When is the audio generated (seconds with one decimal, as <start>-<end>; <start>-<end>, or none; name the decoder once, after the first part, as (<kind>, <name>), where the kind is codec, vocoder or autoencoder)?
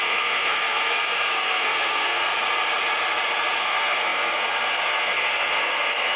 0.0-2.3 (codec, SNAC); 3.6-6.2